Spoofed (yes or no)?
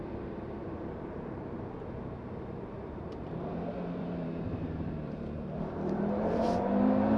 yes